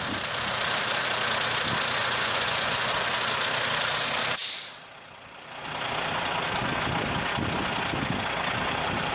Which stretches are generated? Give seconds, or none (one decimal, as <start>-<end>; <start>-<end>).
2.0-2.9